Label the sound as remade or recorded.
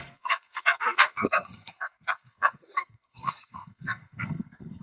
remade